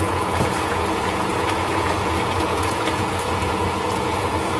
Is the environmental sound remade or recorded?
remade